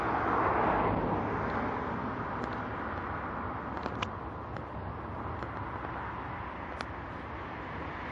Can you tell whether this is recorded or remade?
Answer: recorded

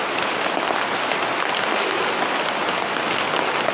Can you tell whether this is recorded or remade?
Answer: recorded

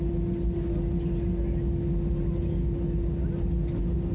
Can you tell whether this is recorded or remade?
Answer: recorded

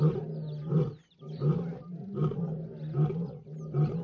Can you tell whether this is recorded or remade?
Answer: recorded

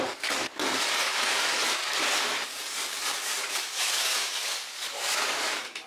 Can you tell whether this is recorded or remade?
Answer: remade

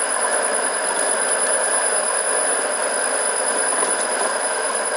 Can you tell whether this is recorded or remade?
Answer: recorded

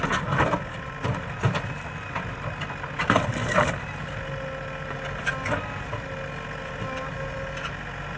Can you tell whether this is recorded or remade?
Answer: recorded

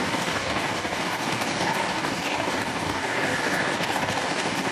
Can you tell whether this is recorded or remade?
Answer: remade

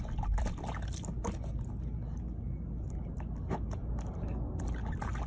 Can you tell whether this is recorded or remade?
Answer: recorded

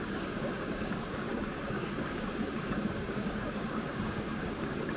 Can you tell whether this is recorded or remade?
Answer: remade